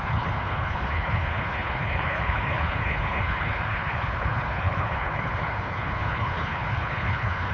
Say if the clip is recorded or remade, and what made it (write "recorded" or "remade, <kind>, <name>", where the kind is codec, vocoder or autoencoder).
remade, codec, HILCodec